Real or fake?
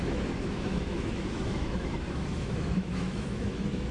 fake